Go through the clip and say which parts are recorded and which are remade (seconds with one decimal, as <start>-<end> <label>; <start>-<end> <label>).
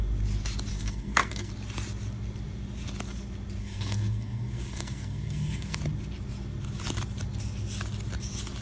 0.0-0.7 recorded; 0.7-1.5 remade; 1.5-3.6 recorded; 3.6-5.8 remade; 5.8-8.6 recorded